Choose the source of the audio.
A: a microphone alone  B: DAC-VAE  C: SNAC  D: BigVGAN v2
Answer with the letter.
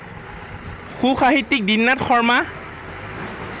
A